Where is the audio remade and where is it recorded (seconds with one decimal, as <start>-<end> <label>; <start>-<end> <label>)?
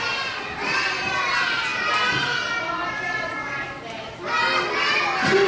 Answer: 0.0-5.5 recorded